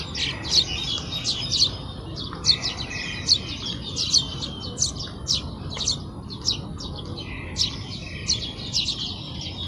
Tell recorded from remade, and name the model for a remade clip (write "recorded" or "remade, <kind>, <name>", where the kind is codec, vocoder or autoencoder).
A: recorded